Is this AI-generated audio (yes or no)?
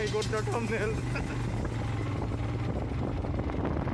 no